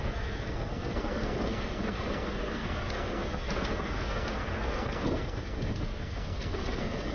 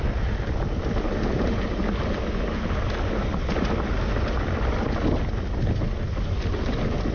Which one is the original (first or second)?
second